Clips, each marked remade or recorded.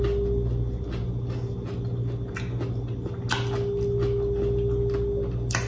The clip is recorded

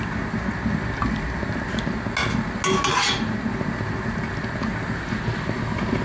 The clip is recorded